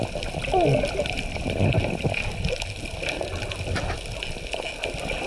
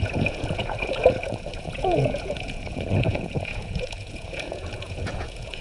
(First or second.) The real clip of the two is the first